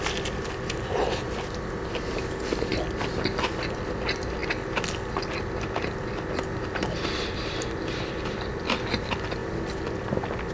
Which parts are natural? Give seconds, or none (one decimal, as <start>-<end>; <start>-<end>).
0.0-10.5